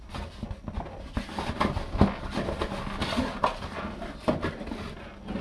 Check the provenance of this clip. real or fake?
real